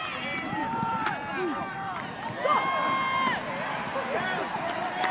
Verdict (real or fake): real